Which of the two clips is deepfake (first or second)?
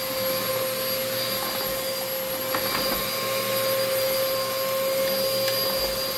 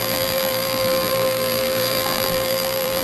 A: second